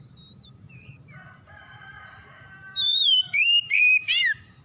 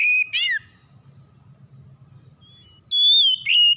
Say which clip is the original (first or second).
second